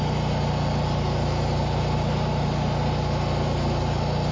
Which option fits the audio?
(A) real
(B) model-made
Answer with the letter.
A